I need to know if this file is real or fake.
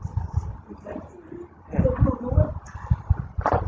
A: real